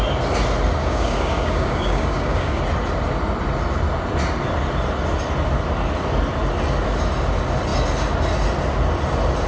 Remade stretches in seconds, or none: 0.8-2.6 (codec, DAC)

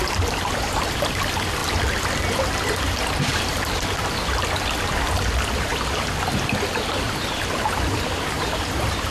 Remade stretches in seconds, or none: 1.6-2.1 (vocoder, BigVGAN v2); 3.3-4.9

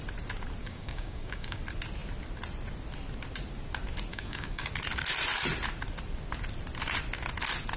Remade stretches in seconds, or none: 0.6-1.6 (codec, DAC); 4.1-4.7

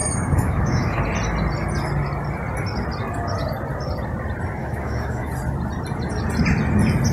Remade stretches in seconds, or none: 0.0-1.0 (autoencoder, DAC-VAE); 4.6-5.3

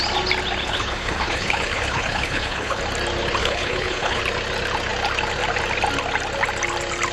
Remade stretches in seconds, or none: 0.6-2.8 (codec, HILCodec); 3.4-4.2